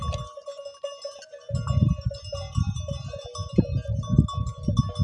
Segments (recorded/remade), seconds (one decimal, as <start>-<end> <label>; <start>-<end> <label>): 0.0-5.0 recorded